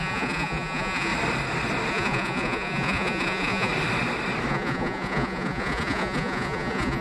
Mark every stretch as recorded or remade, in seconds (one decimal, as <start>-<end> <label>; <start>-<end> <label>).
0.0-1.1 remade; 1.1-1.9 recorded; 1.9-3.7 remade; 3.7-4.5 recorded; 4.5-7.0 remade